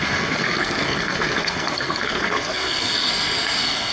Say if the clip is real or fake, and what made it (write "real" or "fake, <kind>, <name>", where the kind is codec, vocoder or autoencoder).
fake, codec, SNAC